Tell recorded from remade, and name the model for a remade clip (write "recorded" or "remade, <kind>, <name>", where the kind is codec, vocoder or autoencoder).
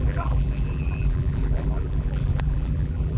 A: remade, vocoder, BigVGAN v2